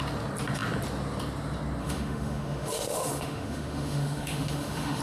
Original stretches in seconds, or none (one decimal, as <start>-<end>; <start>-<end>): 0.0-1.8